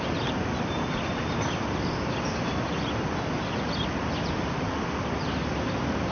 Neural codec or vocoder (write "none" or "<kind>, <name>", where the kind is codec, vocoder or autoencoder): none